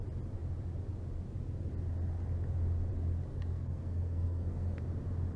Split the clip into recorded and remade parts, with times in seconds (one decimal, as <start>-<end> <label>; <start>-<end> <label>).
0.0-3.3 recorded; 3.3-4.8 remade; 4.8-5.4 recorded